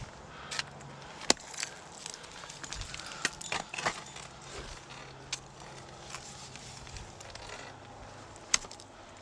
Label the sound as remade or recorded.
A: recorded